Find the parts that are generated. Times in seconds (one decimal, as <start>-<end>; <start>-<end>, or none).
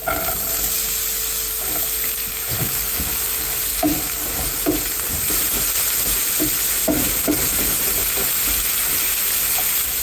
3.7-5.6